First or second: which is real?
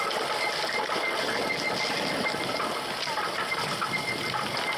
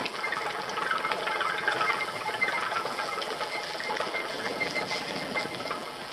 first